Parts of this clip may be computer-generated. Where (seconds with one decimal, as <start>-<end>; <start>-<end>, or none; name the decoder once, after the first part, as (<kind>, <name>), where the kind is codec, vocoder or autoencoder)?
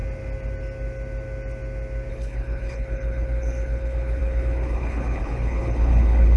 2.1-6.4 (codec, HILCodec)